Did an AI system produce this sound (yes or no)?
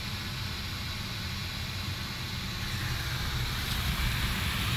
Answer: no